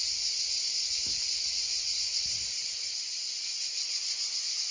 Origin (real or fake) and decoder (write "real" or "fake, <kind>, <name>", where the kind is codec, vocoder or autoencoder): real